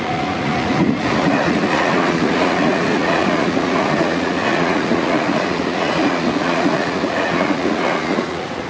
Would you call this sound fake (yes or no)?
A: yes